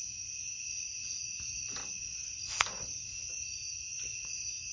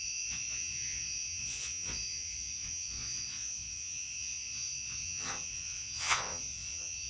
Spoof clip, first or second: second